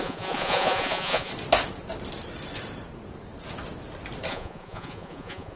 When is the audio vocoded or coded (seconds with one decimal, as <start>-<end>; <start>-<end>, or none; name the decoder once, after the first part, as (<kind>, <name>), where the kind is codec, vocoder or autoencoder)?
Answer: 0.0-1.3 (vocoder, Vocos); 4.3-5.6